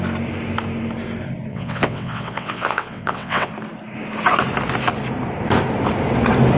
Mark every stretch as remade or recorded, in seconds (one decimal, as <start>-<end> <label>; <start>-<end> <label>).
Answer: 0.0-1.5 recorded; 1.5-3.5 remade; 3.5-6.6 recorded